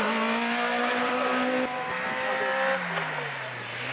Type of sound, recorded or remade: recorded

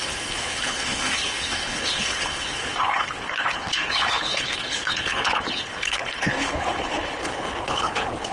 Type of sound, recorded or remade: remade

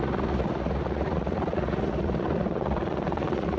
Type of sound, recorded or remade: remade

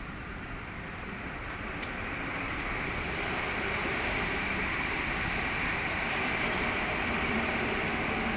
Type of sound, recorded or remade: remade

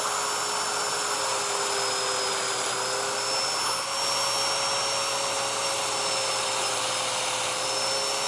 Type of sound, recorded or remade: recorded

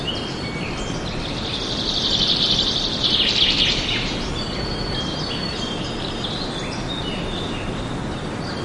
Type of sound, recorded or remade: recorded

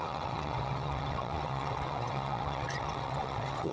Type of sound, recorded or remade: remade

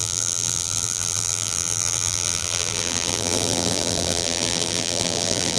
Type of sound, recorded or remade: remade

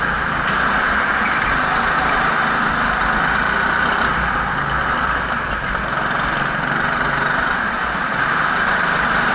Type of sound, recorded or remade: recorded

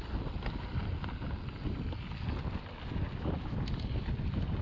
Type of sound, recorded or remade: recorded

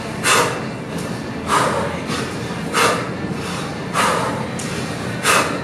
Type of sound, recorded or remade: recorded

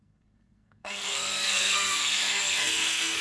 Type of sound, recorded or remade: remade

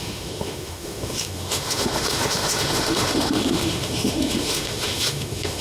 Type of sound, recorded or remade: remade